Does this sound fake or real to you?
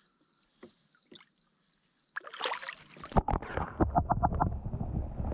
real